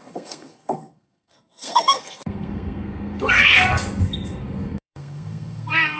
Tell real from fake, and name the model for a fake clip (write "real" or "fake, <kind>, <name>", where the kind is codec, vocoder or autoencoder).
fake, codec, SNAC